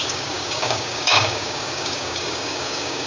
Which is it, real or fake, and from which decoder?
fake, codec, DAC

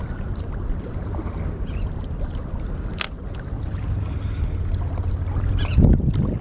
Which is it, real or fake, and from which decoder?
real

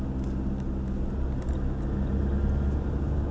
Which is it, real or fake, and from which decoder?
real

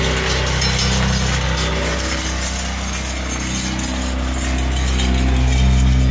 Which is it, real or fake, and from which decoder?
real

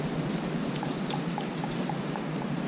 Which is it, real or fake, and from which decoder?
real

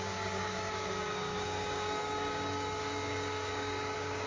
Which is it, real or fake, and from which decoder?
fake, codec, DAC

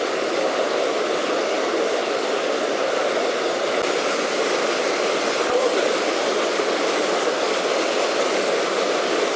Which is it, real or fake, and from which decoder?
real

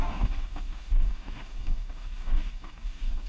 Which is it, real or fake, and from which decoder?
fake, codec, DAC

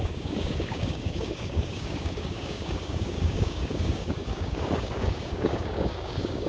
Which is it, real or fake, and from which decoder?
fake, codec, DAC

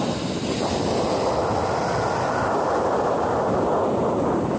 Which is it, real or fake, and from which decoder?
real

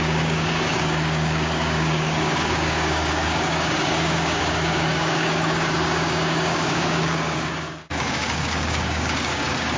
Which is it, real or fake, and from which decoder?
fake, codec, DAC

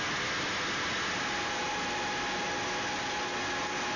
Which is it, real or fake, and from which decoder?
real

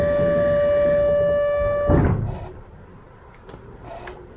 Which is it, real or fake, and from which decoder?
real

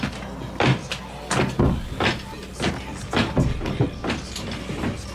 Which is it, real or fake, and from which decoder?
real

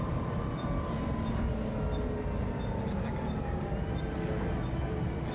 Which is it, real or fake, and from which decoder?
real